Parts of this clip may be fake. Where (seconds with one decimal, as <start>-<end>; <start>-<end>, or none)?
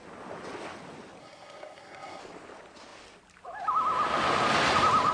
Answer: 1.2-2.2